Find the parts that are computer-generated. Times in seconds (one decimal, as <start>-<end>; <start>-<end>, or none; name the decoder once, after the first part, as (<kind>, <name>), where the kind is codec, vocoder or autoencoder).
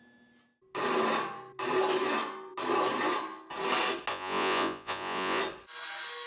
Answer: 4.1-5.4 (vocoder, Vocos)